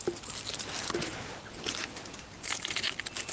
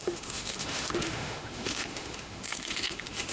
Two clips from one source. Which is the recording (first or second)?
first